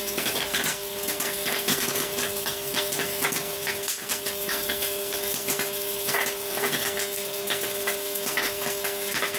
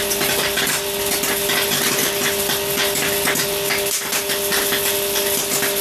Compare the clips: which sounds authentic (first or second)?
second